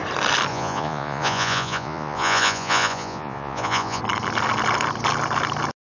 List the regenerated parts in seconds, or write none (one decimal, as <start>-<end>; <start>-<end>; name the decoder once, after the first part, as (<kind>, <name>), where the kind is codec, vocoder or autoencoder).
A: 0.5-4.0 (vocoder, Vocos)